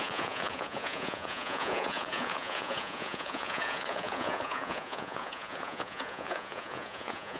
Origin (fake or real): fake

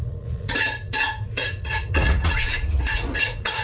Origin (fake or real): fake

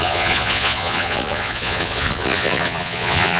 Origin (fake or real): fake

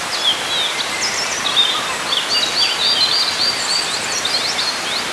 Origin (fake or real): real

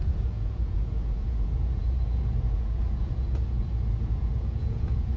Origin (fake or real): fake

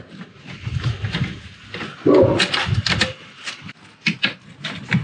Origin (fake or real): real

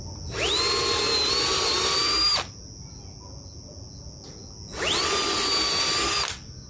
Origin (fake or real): real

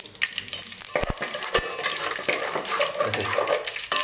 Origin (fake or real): real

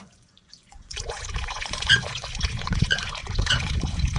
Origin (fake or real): fake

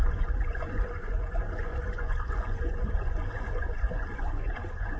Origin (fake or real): fake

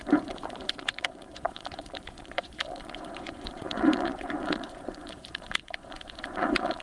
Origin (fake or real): fake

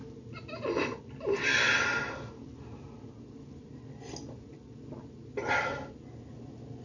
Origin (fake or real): real